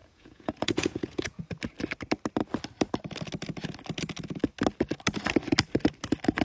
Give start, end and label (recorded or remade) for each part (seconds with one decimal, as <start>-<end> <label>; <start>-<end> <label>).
0.0-1.4 remade; 1.4-6.4 recorded